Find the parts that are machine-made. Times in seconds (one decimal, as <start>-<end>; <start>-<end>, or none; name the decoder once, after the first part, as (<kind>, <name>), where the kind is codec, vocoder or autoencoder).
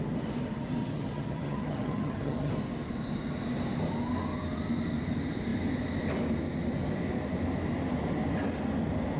0.8-2.5 (vocoder, HiFi-GAN)